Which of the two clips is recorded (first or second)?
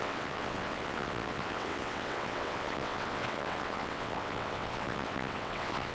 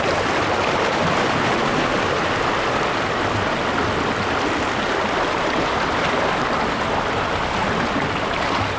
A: second